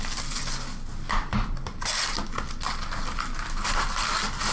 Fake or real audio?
real